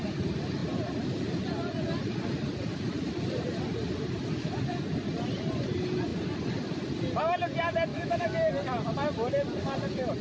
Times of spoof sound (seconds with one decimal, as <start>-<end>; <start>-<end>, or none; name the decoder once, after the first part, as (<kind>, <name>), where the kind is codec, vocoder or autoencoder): 7.9-8.5 (autoencoder, DAC-VAE)